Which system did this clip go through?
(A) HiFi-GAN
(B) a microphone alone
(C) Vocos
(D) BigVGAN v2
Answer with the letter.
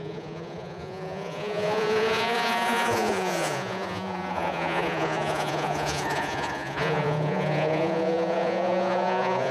C